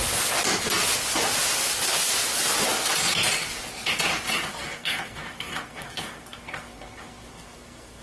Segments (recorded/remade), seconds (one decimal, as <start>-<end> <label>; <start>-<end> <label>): 0.0-4.5 recorded; 4.5-8.0 remade